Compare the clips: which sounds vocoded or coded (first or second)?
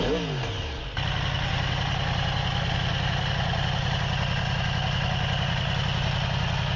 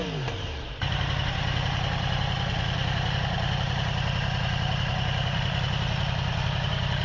second